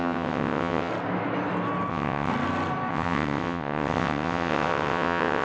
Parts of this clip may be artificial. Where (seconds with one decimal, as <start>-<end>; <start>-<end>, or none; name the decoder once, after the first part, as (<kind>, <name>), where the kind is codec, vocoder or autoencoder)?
0.0-0.9 (vocoder, WaveNeXt); 1.9-2.3; 2.9-5.4